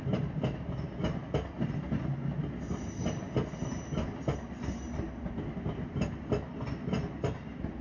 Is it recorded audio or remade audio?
recorded